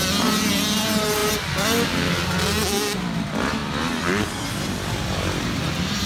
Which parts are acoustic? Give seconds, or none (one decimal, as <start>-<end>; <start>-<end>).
0.0-6.1

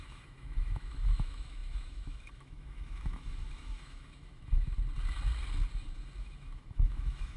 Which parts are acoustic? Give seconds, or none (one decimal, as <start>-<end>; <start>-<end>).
4.7-6.2

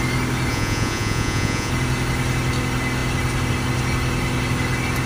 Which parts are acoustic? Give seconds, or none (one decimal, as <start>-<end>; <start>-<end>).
0.0-0.5; 1.7-5.1

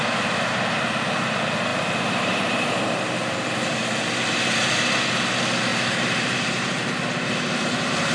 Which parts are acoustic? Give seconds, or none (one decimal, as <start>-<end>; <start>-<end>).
0.0-1.7; 2.7-5.7; 6.9-8.1

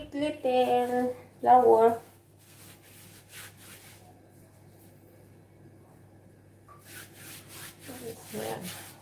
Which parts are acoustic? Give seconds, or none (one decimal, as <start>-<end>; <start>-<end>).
0.0-1.9; 2.6-9.0

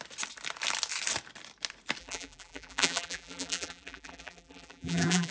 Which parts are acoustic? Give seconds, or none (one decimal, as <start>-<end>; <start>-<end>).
0.0-2.0

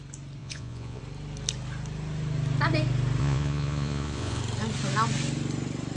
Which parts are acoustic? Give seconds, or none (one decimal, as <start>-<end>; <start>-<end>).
0.0-0.4; 1.0-3.2; 4.4-6.0

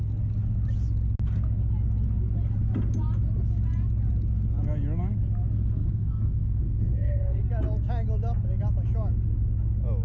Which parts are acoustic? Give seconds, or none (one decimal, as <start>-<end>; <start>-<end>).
0.0-5.8; 7.4-10.0